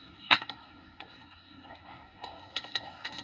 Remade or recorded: remade